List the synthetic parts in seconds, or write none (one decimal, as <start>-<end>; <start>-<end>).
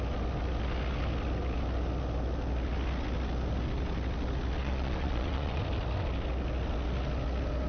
4.6-5.6